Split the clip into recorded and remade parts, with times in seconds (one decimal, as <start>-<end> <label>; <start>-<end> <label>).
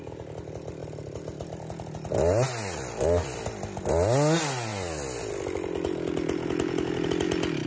0.0-7.7 recorded